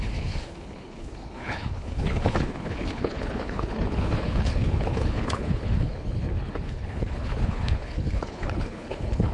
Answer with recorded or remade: remade